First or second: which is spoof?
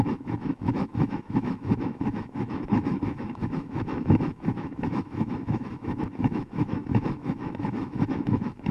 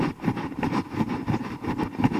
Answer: first